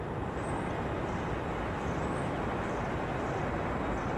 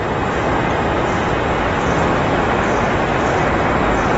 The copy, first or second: first